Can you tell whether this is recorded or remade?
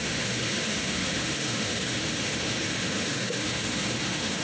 remade